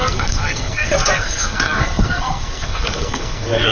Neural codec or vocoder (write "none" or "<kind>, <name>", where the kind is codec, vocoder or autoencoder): codec, SNAC